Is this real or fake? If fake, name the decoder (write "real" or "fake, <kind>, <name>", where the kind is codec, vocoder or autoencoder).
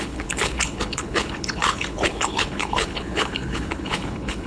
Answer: fake, codec, HILCodec